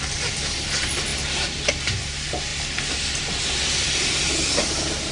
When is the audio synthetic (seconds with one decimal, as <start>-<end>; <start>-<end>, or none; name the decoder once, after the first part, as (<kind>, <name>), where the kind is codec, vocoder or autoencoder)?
none